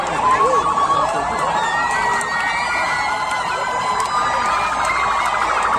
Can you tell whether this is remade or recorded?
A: recorded